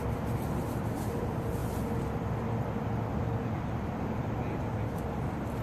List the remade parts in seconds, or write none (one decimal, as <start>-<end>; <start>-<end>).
none